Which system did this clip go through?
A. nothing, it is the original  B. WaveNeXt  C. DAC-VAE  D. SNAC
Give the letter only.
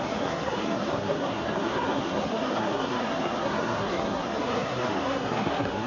D